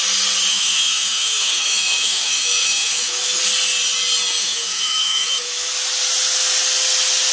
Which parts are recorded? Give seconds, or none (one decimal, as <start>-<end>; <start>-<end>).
0.0-0.5; 3.4-4.4; 5.7-7.3